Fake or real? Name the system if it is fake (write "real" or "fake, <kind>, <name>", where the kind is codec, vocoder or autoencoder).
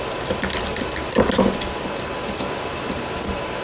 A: real